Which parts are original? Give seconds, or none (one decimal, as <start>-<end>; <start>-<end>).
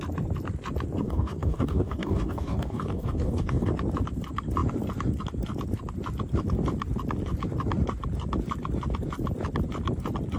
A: 0.0-1.0; 3.7-10.4